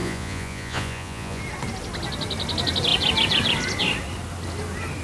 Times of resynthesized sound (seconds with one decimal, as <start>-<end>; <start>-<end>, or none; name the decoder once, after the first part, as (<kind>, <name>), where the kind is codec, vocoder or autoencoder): 0.0-1.4 (vocoder, Vocos)